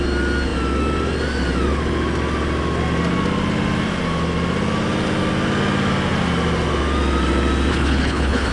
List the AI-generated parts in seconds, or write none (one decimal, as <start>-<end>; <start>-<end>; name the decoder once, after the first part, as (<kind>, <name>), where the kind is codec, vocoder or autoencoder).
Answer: 7.7-8.5 (codec, HILCodec)